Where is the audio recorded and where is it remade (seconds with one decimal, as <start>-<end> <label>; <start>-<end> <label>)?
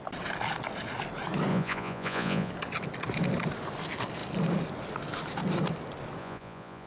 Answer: 0.0-1.5 recorded; 1.5-2.5 remade; 2.5-6.2 recorded; 6.2-6.9 remade